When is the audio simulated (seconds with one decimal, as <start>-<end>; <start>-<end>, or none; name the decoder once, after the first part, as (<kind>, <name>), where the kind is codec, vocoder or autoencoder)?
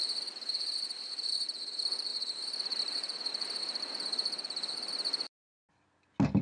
none